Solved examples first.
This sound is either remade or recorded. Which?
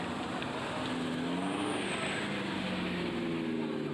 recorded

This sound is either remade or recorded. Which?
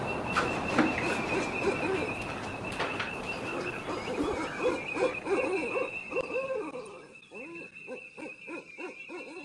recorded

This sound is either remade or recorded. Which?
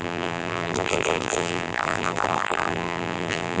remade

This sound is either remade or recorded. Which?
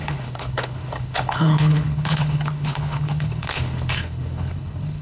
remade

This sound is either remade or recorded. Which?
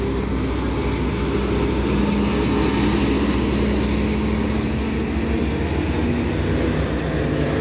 recorded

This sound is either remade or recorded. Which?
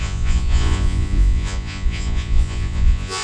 remade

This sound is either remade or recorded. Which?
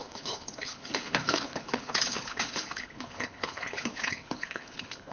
remade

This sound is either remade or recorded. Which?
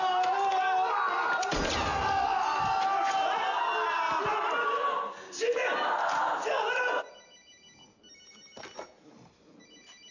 recorded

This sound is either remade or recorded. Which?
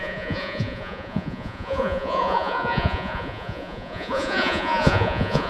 remade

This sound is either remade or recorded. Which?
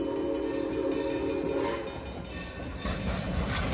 recorded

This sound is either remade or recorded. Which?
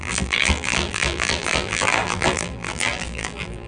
remade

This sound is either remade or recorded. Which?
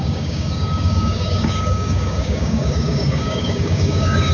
remade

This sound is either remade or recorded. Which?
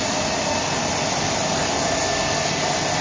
recorded